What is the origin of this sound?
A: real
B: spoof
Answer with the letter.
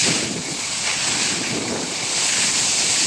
A